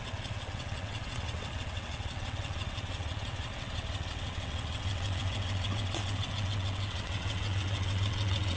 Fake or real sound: fake